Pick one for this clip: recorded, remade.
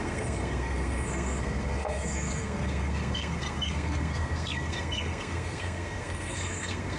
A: remade